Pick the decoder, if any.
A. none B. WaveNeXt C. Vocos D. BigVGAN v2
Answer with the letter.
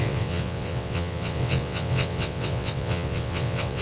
B